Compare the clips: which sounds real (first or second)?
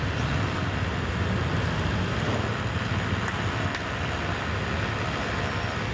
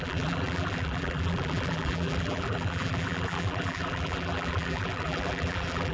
first